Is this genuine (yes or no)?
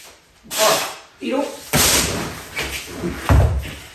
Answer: yes